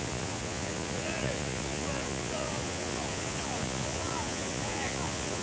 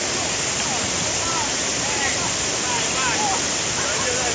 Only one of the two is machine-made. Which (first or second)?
first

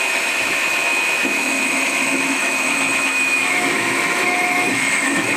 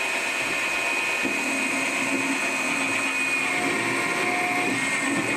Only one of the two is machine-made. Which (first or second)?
first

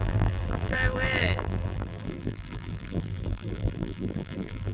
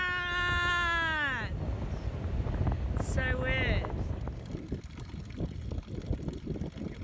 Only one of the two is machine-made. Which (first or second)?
first